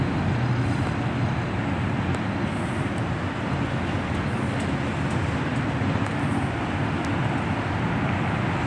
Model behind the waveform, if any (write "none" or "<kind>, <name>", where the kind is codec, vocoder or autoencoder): none